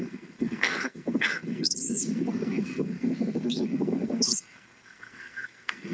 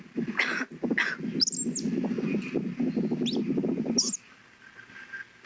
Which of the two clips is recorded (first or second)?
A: second